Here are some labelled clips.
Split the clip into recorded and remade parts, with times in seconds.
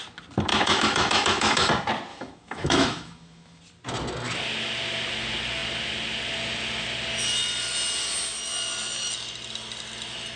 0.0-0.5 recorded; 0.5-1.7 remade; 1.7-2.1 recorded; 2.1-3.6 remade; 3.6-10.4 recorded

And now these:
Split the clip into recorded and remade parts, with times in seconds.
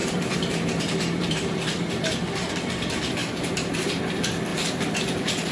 0.0-2.5 remade; 2.5-3.2 recorded; 3.2-4.0 remade; 4.0-4.5 recorded; 4.5-5.5 remade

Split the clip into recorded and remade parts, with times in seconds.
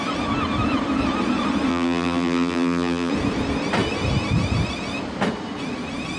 0.0-1.7 recorded; 1.7-3.1 remade; 3.1-6.2 recorded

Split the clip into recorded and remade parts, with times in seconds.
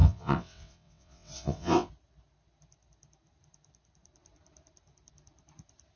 0.0-1.9 remade; 1.9-6.0 recorded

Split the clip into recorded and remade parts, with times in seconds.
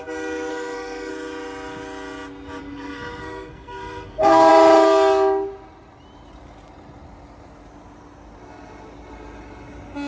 0.0-0.5 recorded; 0.5-1.1 remade; 1.1-2.6 recorded; 2.6-4.5 remade; 4.5-10.1 recorded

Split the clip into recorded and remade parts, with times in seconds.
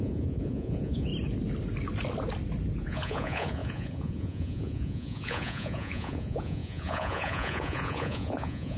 0.0-1.1 remade; 1.1-2.8 recorded; 2.8-8.8 remade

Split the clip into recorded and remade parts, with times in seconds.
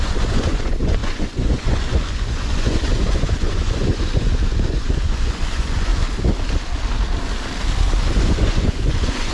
0.0-5.9 remade; 5.9-8.0 recorded; 8.0-9.3 remade